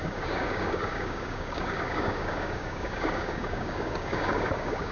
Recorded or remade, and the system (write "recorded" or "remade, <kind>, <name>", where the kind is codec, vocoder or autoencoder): remade, codec, DAC